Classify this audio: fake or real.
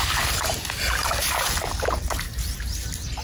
real